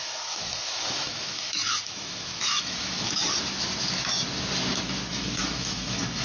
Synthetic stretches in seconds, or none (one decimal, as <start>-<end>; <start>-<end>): 0.0-3.2; 5.1-6.2